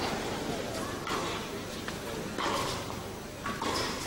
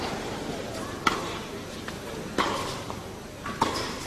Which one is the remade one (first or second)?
second